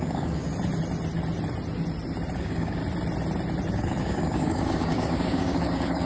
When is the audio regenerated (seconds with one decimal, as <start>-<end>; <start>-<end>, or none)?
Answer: 0.0-0.5; 2.4-2.8; 3.7-6.1